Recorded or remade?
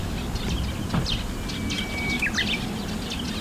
recorded